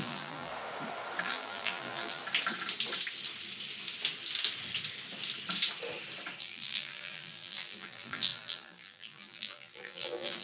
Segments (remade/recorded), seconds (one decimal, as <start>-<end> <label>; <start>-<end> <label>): 0.0-0.5 remade; 0.5-1.2 recorded; 1.2-2.2 remade; 2.2-6.4 recorded; 6.4-10.4 remade

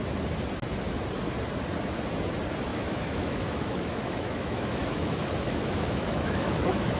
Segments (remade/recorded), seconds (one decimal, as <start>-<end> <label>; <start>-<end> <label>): 0.0-2.7 recorded; 2.7-7.0 remade

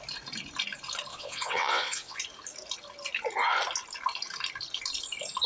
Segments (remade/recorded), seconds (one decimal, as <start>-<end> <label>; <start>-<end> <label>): 0.0-1.1 recorded; 1.1-2.2 remade; 2.2-5.5 recorded

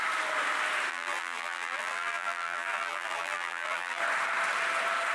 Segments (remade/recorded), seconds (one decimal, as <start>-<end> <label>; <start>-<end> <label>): 0.0-0.9 recorded; 0.9-4.0 remade; 4.0-5.1 recorded

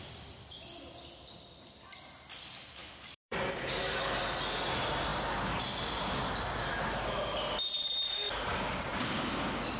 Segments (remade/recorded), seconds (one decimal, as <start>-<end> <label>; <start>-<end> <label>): 0.0-2.8 recorded; 2.8-4.2 remade; 4.2-9.8 recorded

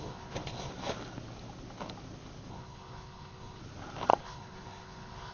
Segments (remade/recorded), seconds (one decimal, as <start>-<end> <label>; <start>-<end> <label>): 0.0-0.7 remade; 0.7-2.5 recorded; 2.5-3.6 remade; 3.6-4.2 recorded; 4.2-5.3 remade

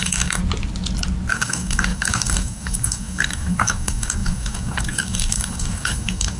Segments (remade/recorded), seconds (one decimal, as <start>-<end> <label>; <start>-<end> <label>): 0.0-0.4 remade; 0.4-1.3 recorded; 1.3-6.4 remade

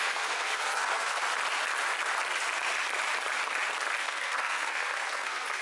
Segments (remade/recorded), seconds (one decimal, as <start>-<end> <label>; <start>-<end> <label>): 0.0-1.2 remade; 1.2-4.0 recorded; 4.0-5.6 remade